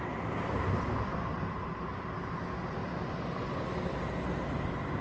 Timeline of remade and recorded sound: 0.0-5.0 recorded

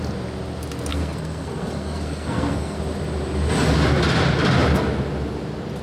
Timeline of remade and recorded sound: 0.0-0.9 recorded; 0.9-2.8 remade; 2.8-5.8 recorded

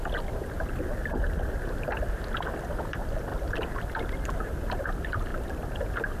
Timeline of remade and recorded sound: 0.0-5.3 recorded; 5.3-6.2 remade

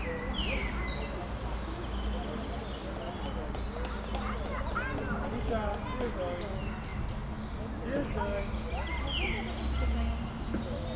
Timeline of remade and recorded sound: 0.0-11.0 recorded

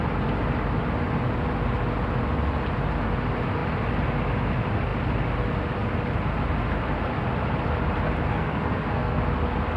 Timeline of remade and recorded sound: 0.0-8.3 recorded; 8.3-9.2 remade; 9.2-9.8 recorded